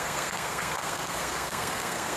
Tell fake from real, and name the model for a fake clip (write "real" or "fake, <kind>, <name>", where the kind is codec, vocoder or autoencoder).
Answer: fake, codec, SNAC